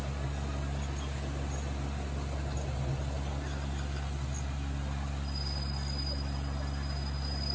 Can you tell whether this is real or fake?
real